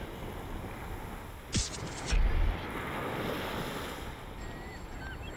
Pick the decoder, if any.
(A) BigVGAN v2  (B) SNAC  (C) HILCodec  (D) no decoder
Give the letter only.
D